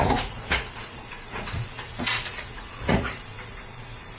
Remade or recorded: remade